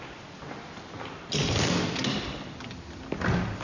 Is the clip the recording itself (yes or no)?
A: yes